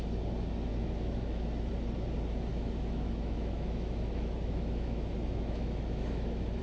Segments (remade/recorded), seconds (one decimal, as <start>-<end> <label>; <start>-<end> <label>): 0.0-0.7 recorded; 0.7-1.5 remade; 1.5-2.5 recorded; 2.5-6.6 remade